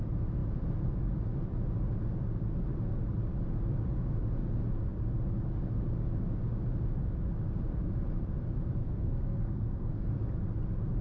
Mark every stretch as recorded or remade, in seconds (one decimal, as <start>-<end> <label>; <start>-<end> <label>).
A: 0.0-8.8 recorded; 8.8-10.1 remade; 10.1-11.0 recorded